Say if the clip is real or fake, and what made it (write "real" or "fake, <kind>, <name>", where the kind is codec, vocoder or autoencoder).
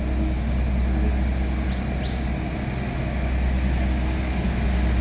real